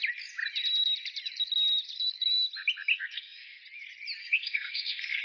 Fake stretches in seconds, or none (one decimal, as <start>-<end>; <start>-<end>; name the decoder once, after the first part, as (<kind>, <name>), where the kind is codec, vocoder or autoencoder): 2.9-3.6 (codec, SNAC); 4.2-5.2